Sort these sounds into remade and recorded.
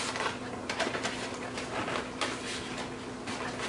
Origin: recorded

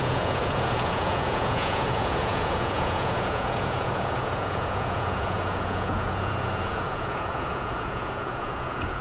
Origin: remade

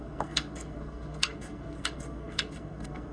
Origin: remade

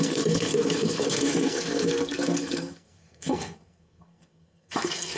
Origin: remade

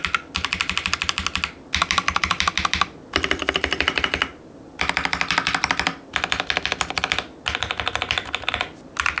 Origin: recorded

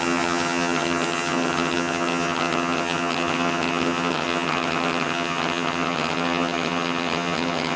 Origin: remade